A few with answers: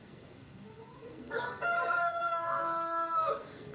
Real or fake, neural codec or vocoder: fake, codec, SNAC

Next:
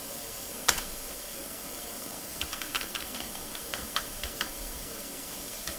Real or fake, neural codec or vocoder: fake, codec, SNAC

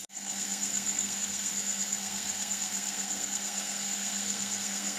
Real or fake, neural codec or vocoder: fake, codec, SNAC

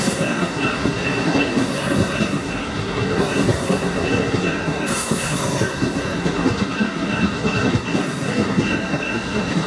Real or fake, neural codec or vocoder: fake, codec, SNAC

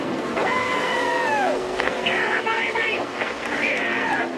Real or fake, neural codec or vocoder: fake, codec, SNAC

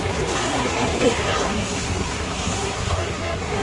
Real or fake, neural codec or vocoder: fake, codec, SNAC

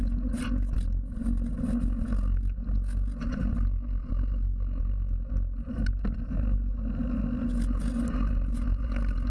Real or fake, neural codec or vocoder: real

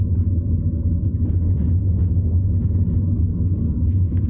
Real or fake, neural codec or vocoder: real